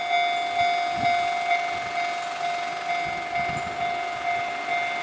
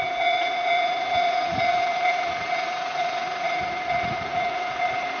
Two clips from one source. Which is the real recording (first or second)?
first